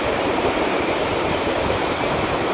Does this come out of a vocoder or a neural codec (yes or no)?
yes